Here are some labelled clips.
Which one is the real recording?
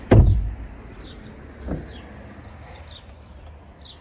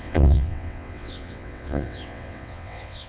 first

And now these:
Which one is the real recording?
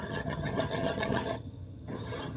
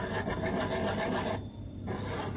second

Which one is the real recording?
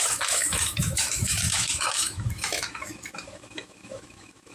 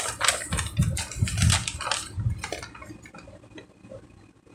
second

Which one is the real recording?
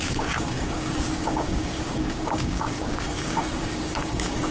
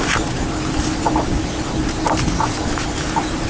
second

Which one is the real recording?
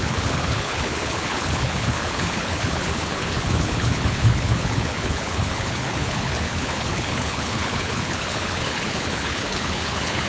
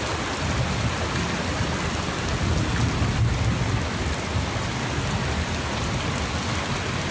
second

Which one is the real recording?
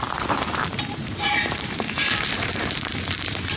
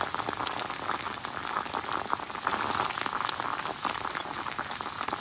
second